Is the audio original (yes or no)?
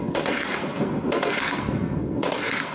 no